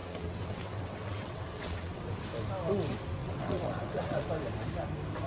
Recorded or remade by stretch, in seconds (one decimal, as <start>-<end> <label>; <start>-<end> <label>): 0.0-2.0 remade; 2.0-3.2 recorded; 3.2-4.3 remade; 4.3-5.3 recorded